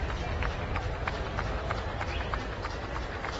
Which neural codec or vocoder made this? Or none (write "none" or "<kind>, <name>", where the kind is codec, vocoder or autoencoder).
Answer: none